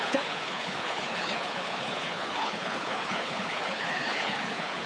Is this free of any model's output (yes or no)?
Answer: no